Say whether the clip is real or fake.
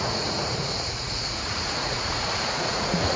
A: fake